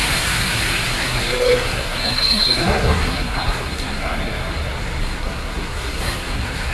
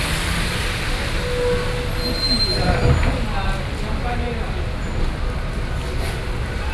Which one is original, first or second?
second